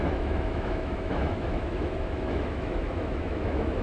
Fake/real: fake